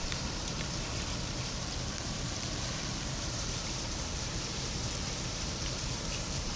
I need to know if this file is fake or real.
fake